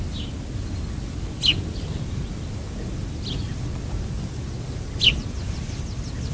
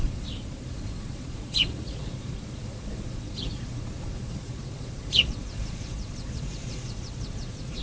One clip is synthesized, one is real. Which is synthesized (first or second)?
second